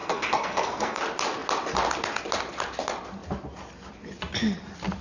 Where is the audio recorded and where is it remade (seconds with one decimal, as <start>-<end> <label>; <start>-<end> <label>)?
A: 0.0-1.0 remade; 1.0-5.0 recorded